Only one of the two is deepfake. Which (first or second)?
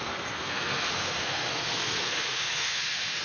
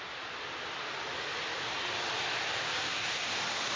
first